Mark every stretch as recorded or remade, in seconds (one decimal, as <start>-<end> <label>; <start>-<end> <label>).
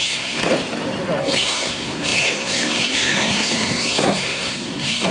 0.0-0.4 remade; 0.4-1.2 recorded; 1.2-5.1 remade